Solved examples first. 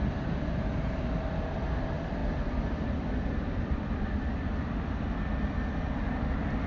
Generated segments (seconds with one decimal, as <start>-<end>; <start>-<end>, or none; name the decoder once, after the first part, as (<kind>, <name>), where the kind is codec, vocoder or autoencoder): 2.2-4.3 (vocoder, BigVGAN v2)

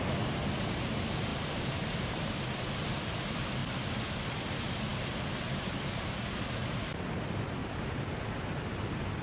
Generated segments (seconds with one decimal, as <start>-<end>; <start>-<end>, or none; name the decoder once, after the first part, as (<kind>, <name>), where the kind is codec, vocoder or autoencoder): 1.3-2.4 (vocoder, BigVGAN v2); 7.6-8.2

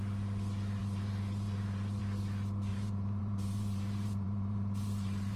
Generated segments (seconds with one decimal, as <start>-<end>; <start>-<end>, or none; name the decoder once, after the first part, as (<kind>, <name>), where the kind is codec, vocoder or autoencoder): 0.8-2.0 (vocoder, BigVGAN v2); 2.7-5.4